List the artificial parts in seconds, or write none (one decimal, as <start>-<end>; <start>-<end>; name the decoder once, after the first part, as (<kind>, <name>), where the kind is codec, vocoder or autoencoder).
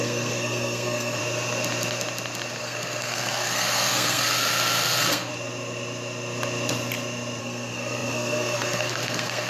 0.0-1.2 (codec, SNAC); 2.6-5.3; 7.4-9.5